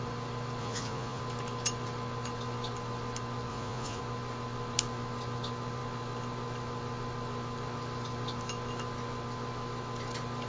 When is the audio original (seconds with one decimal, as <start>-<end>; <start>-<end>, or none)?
0.0-0.6; 1.2-3.5; 4.0-10.5

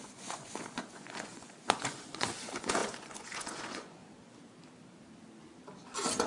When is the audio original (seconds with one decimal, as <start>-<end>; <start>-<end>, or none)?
4.0-6.3